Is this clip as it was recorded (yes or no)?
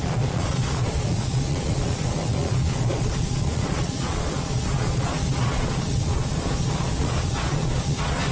no